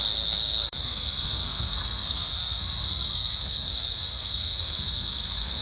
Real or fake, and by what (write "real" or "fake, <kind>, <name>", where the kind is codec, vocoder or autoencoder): fake, codec, SNAC